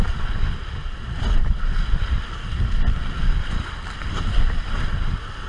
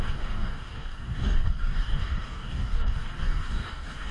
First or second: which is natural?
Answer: first